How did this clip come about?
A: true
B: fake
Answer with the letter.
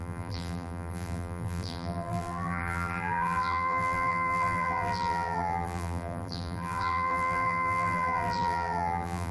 B